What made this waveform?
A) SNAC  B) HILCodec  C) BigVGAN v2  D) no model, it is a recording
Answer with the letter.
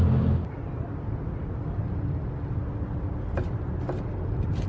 D